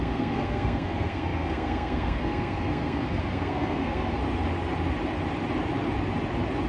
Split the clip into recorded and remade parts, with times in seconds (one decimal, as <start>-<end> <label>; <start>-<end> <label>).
0.0-4.2 remade; 4.2-6.7 recorded